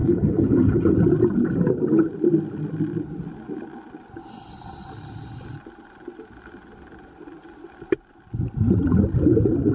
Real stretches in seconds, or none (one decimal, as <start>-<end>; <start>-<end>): 0.9-9.7